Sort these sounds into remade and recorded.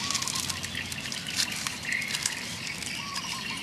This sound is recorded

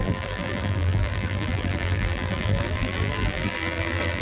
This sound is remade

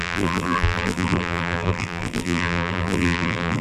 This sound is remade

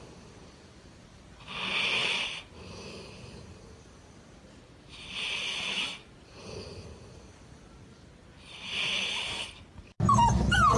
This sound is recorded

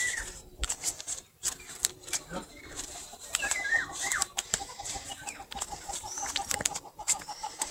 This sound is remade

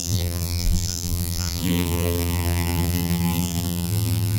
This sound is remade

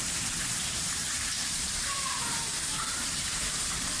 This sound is remade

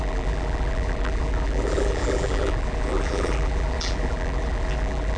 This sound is remade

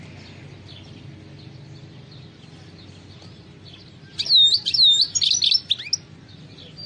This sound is recorded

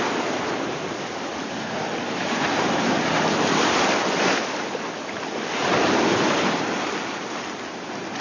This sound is recorded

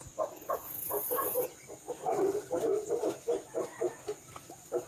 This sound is recorded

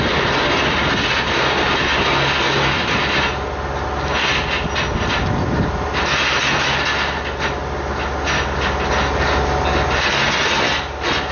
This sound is recorded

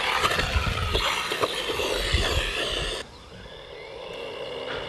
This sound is recorded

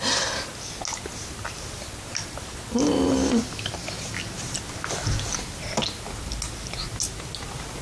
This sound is recorded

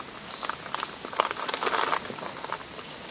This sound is remade